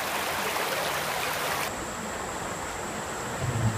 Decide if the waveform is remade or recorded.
recorded